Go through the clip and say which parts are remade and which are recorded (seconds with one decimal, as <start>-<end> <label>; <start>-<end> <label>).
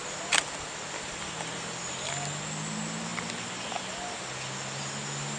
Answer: 0.0-5.4 recorded